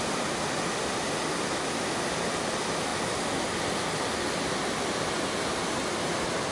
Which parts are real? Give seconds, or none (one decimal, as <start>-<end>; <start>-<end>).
0.0-6.5